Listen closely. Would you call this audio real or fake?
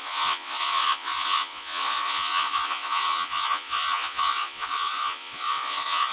fake